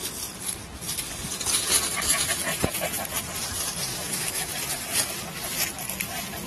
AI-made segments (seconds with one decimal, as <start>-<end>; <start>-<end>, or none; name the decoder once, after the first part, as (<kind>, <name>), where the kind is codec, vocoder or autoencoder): 3.9-4.5 (autoencoder, DAC-VAE)